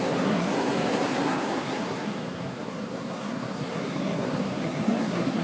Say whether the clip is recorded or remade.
remade